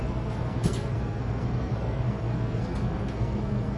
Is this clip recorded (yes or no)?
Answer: no